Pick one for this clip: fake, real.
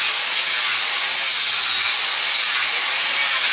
real